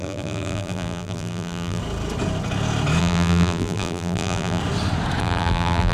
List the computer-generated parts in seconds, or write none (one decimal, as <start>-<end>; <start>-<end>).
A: 0.0-1.8; 3.0-4.6; 5.2-5.9